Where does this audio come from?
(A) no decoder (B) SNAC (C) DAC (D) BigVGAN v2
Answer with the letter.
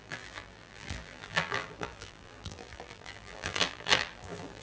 D